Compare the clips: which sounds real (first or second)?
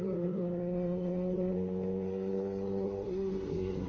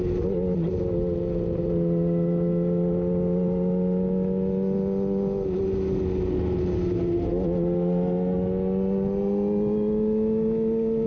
second